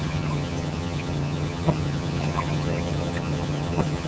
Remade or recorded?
remade